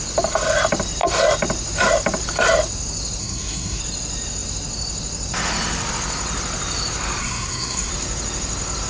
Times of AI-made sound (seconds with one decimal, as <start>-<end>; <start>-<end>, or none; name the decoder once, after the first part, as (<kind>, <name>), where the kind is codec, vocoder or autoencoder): 3.2-3.8 (codec, SNAC); 7.2-7.9